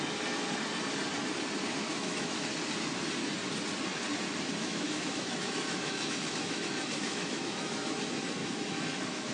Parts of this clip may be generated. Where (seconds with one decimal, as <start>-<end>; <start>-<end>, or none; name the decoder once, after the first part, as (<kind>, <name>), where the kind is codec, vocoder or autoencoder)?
1.9-2.5 (autoencoder, DAC-VAE); 4.6-8.0; 8.4-9.3